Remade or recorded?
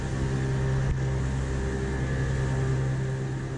recorded